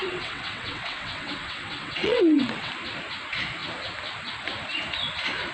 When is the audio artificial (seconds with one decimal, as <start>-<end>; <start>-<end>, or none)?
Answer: 0.0-2.7